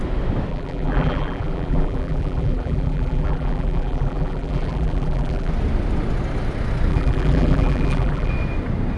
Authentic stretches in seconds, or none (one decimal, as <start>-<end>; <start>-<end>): 0.0-0.5; 5.5-6.9; 8.3-9.0